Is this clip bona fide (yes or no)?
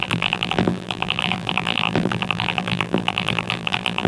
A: no